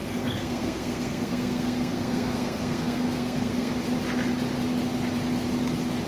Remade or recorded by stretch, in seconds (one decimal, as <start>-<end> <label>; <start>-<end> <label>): 0.0-3.7 remade; 3.7-6.1 recorded